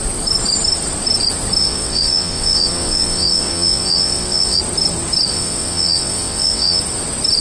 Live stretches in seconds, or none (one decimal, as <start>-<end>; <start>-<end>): 0.0-1.6; 4.6-5.3; 6.8-7.4